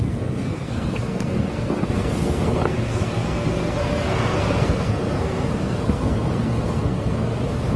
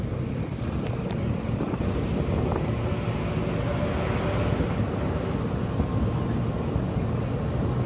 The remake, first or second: first